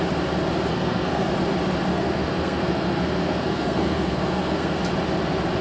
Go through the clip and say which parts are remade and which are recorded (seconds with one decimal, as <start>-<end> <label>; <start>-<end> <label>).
0.0-0.7 recorded; 0.7-1.3 remade; 1.3-1.9 recorded; 1.9-4.8 remade; 4.8-5.6 recorded